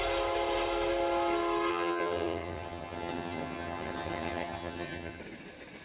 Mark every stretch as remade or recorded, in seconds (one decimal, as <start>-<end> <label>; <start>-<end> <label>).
0.0-1.7 recorded; 1.7-5.2 remade; 5.2-5.8 recorded